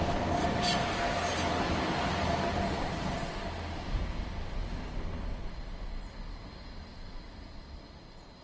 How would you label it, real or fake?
real